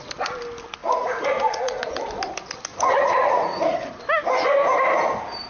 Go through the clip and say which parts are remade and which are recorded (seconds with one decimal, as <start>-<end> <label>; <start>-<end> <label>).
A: 0.0-0.8 recorded; 0.8-2.1 remade; 2.1-2.7 recorded; 2.7-3.9 remade; 3.9-5.5 recorded